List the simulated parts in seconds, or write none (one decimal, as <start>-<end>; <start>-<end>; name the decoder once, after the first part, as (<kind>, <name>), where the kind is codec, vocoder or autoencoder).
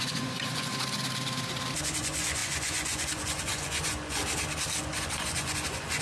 0.0-0.7 (vocoder, Vocos); 1.8-4.2; 4.8-6.0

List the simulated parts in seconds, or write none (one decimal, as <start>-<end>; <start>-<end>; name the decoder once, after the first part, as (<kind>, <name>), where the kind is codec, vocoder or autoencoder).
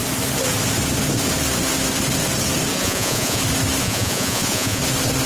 2.7-3.4 (vocoder, Vocos); 3.8-4.8